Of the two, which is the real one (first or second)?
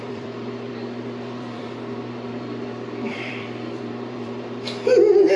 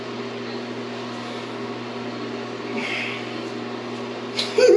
second